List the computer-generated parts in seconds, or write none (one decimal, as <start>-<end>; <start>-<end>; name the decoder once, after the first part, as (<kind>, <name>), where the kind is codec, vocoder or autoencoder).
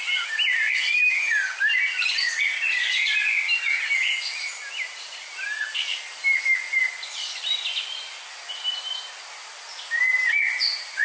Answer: none